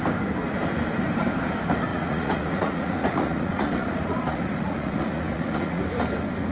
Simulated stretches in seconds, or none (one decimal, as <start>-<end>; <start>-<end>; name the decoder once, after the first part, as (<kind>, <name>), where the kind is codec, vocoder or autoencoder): 1.9-5.8 (vocoder, Vocos)